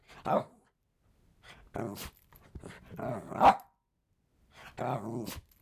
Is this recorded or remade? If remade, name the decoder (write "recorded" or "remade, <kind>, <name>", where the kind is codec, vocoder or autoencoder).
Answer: recorded